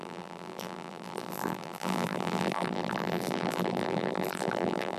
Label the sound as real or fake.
fake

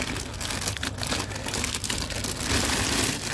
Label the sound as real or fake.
real